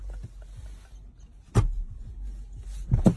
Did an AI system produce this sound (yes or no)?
no